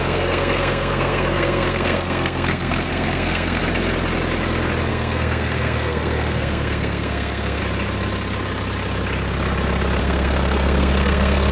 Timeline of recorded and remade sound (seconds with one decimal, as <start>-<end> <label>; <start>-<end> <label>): 0.0-3.6 remade; 3.6-4.9 recorded; 4.9-7.6 remade; 7.6-10.0 recorded; 10.0-11.5 remade